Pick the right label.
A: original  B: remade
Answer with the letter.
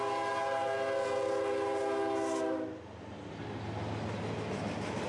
A